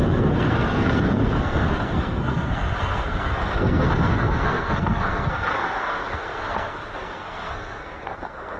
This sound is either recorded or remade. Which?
remade